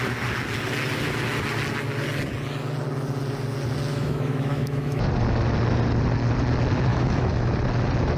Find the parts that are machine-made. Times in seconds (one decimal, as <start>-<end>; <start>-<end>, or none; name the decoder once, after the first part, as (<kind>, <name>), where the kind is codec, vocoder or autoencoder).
3.9-5.0 (autoencoder, DAC-VAE); 6.9-7.5